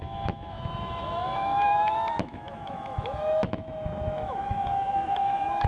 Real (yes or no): no